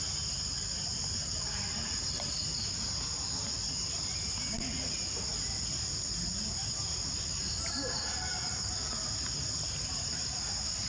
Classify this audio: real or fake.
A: real